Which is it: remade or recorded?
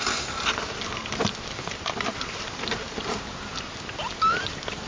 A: recorded